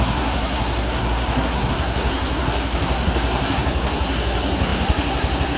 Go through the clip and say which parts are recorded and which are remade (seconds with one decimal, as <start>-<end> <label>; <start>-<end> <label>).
0.0-5.6 remade